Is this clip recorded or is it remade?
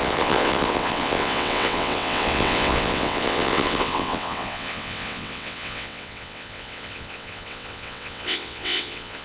remade